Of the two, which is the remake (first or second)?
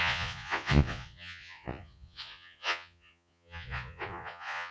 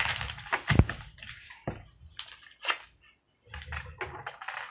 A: first